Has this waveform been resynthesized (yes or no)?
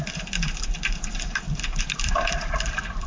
no